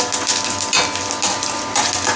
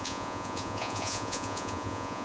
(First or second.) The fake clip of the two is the second